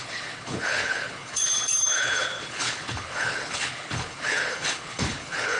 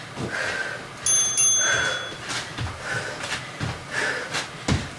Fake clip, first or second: first